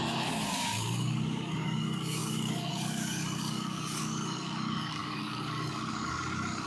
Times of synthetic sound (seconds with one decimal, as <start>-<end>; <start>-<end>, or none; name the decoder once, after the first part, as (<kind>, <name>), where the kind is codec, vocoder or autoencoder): 0.0-6.7 (codec, DAC)